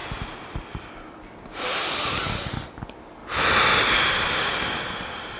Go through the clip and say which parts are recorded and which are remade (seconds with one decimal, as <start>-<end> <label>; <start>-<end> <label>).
0.0-5.4 recorded